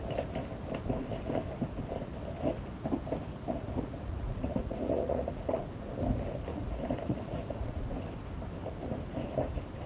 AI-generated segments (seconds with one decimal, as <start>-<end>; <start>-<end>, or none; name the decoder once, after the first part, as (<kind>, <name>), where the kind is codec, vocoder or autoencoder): 3.3-5.9 (vocoder, Vocos); 6.5-8.0